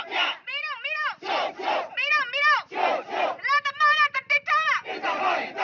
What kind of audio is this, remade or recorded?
recorded